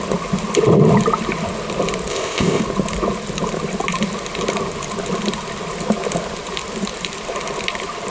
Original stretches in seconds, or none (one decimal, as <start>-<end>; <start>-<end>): 0.0-2.1; 2.6-8.1